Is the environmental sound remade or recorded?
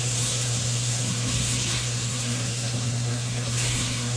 remade